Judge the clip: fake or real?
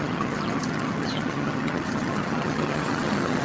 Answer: fake